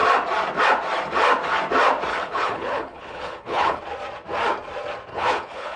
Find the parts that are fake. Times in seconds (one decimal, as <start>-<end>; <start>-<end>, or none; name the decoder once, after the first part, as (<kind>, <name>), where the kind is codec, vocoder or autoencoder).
2.1-3.8 (codec, HILCodec); 5.1-5.8